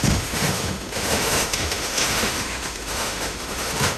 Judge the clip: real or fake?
fake